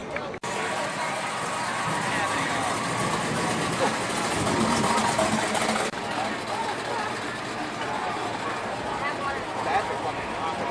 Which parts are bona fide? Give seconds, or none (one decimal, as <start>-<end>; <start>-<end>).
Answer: 0.0-10.7